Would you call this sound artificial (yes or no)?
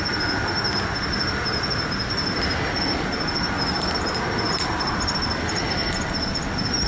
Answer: no